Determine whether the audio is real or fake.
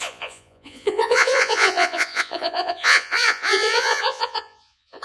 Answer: fake